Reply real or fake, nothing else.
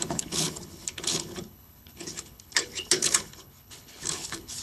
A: fake